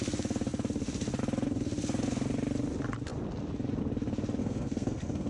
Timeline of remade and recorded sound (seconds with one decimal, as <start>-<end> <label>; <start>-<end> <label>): 0.0-4.4 recorded; 4.4-5.3 remade